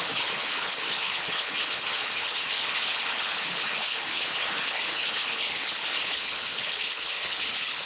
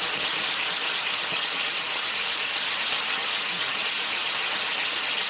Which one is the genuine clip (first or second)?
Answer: second